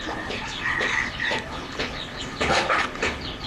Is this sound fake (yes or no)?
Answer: yes